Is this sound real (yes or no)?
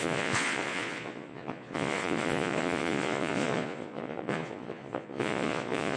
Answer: no